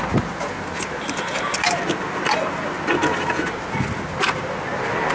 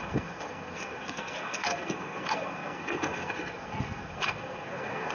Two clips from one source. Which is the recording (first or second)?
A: first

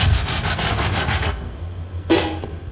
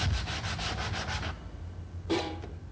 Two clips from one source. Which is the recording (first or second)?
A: second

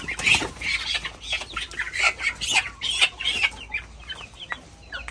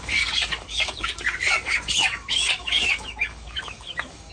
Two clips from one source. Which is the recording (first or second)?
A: first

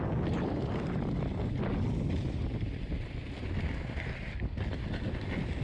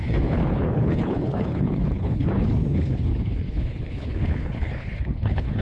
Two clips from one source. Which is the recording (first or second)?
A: first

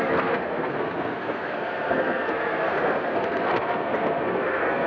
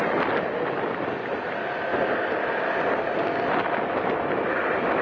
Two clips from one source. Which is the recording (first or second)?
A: second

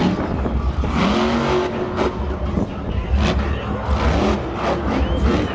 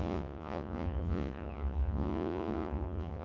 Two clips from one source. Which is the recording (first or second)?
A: first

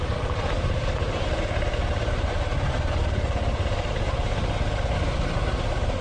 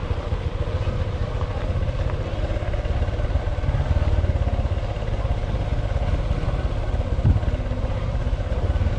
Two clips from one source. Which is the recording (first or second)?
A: second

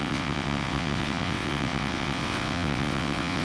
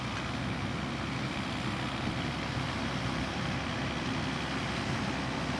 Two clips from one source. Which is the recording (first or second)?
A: second